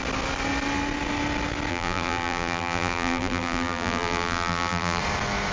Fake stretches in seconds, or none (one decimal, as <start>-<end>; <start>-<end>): 1.7-5.0